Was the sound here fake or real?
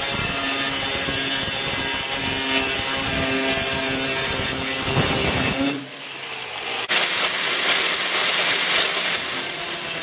real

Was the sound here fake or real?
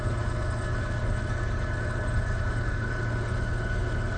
fake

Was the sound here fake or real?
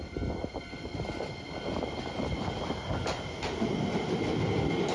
real